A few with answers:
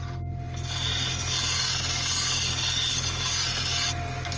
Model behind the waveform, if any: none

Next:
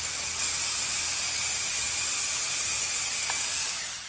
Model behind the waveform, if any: none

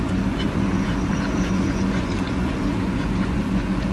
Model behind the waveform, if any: vocoder, Vocos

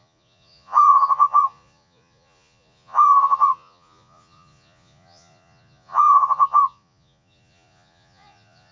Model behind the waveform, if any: vocoder, Vocos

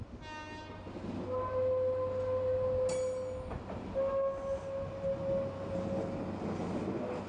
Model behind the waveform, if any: none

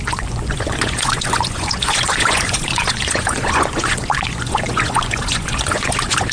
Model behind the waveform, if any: vocoder, Vocos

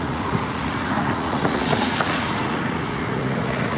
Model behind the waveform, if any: vocoder, Vocos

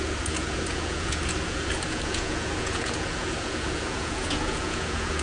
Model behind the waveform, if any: vocoder, Vocos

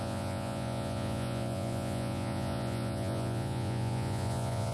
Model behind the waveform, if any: vocoder, Vocos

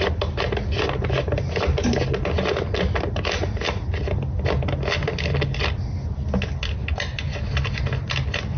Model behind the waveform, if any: none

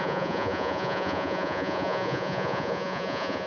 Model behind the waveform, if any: vocoder, Vocos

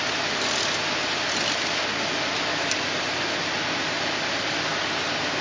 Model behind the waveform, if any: none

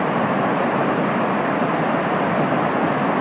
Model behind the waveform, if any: none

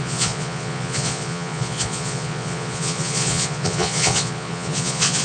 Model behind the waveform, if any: vocoder, Vocos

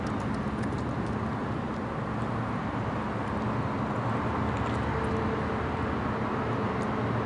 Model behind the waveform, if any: none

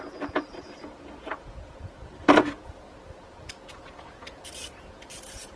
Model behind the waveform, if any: vocoder, Vocos